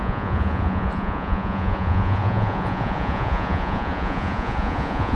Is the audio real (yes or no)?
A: no